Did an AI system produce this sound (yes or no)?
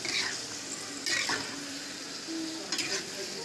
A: no